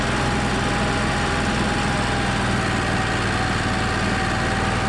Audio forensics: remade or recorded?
recorded